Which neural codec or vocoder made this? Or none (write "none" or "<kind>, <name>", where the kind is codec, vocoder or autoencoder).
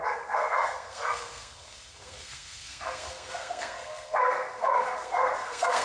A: codec, SNAC